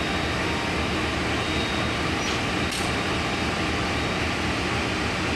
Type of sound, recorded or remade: recorded